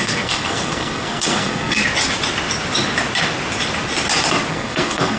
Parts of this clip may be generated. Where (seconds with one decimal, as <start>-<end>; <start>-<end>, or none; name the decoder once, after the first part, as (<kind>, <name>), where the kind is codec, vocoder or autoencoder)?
0.0-1.8 (codec, SNAC); 4.5-5.2